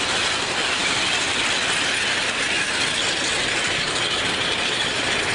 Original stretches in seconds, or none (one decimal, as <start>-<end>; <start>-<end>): 0.0-5.3